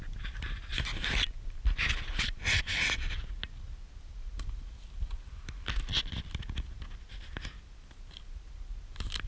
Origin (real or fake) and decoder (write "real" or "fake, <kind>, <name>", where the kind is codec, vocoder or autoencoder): real